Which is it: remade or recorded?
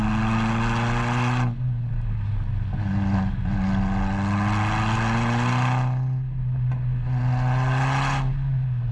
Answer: recorded